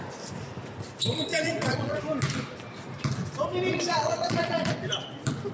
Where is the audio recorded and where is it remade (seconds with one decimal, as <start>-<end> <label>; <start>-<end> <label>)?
0.0-1.3 recorded; 1.3-2.0 remade; 2.0-3.7 recorded; 3.7-4.7 remade; 4.7-5.5 recorded

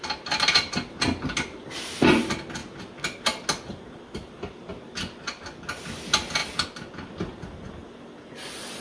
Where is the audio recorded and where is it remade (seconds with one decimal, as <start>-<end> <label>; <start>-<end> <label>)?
0.0-8.8 recorded

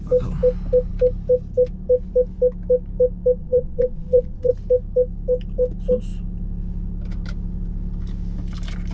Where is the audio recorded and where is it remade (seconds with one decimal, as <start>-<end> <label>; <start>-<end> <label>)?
0.0-3.4 recorded; 3.4-4.5 remade; 4.5-8.9 recorded

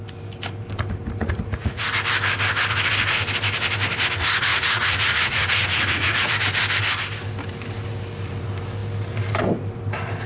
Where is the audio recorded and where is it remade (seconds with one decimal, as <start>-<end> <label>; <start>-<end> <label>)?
0.0-1.2 recorded; 1.2-1.8 remade; 1.8-4.5 recorded; 4.5-6.3 remade; 6.3-10.3 recorded

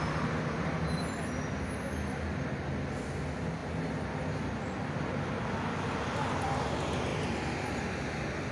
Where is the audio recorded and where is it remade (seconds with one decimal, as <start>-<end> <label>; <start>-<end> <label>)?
0.0-8.5 recorded

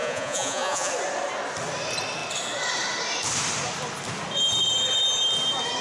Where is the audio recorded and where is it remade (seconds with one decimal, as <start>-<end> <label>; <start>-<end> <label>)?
0.0-0.9 remade; 0.9-5.8 recorded